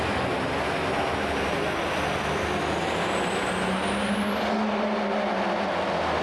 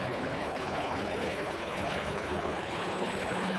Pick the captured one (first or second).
first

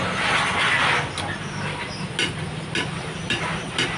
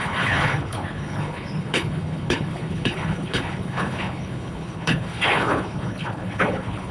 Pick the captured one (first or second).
first